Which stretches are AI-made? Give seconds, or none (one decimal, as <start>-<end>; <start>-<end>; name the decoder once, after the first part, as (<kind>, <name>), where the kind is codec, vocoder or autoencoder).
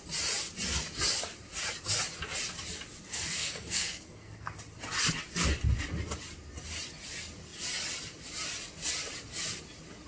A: 3.1-4.6 (codec, SNAC)